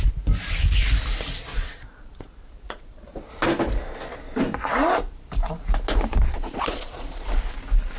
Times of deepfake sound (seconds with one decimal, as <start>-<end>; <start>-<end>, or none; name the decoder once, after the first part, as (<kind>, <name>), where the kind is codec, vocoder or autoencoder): 1.5-3.3 (vocoder, Vocos); 6.1-7.3

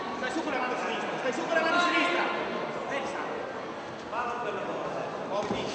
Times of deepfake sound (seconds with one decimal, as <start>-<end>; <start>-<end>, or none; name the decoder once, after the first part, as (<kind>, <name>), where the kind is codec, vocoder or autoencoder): none

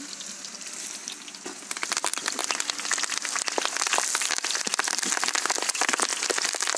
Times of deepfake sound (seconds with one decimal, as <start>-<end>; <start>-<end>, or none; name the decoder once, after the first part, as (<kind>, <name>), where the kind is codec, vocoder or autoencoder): 0.0-2.4 (vocoder, BigVGAN v2); 4.0-6.1

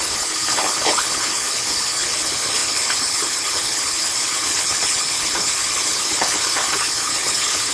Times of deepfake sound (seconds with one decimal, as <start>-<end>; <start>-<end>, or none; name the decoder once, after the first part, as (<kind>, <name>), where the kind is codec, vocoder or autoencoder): 0.0-7.7 (codec, HILCodec)

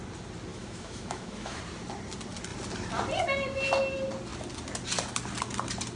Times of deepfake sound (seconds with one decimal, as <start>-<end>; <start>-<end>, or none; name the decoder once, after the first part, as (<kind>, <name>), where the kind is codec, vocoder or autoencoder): 0.5-1.6 (autoencoder, DAC-VAE)

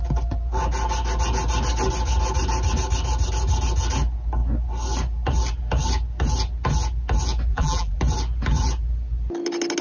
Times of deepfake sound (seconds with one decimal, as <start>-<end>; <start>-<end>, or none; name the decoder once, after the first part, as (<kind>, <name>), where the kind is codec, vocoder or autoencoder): 7.5-8.0 (vocoder, BigVGAN v2)

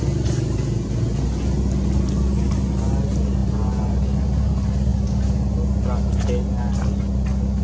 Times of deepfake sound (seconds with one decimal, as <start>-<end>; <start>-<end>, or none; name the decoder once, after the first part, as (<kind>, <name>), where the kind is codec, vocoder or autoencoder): none